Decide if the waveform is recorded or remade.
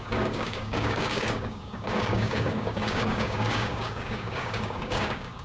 remade